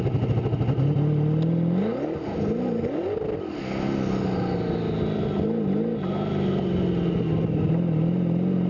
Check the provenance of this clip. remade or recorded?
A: recorded